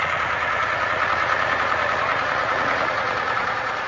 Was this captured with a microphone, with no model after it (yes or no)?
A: no